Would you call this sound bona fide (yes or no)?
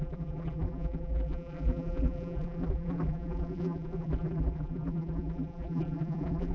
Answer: no